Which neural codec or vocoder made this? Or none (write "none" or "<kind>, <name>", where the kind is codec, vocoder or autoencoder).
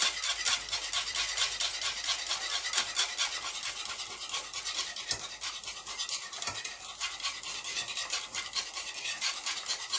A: none